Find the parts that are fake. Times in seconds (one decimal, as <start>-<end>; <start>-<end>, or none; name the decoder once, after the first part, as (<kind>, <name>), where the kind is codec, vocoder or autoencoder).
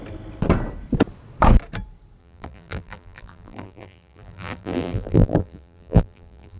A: 2.2-6.6 (vocoder, BigVGAN v2)